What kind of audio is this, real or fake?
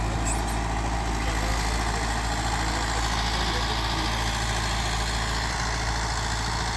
real